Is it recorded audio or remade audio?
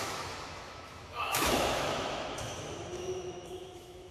remade